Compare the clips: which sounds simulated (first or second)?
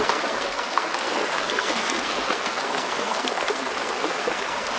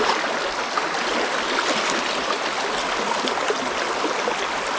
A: first